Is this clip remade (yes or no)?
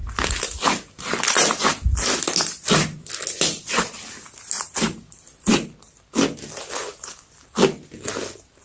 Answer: no